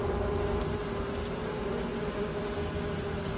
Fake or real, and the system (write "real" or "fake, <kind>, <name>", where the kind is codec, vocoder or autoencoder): real